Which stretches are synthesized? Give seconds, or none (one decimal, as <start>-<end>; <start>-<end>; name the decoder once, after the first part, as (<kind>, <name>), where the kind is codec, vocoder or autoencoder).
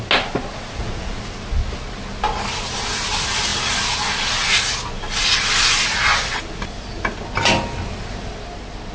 0.5-1.2 (vocoder, Vocos)